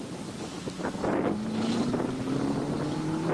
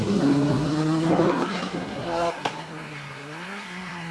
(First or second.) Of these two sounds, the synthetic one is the second